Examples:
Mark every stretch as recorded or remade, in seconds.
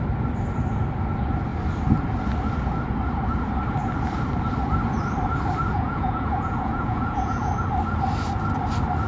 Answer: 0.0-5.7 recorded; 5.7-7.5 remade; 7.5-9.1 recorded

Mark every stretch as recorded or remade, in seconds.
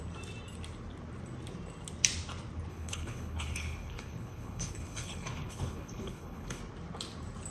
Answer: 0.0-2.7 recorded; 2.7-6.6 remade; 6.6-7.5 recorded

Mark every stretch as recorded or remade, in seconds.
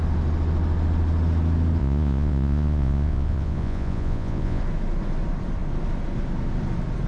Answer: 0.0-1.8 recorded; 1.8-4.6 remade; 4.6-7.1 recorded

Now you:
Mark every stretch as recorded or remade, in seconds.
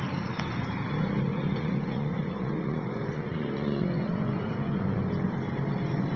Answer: 0.0-1.3 recorded; 1.3-5.0 remade; 5.0-6.2 recorded